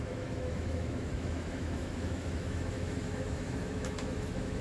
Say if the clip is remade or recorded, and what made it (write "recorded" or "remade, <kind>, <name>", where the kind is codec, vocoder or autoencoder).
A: remade, autoencoder, DAC-VAE